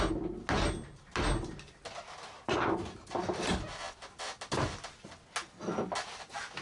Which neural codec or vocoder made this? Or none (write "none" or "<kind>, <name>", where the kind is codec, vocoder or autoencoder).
none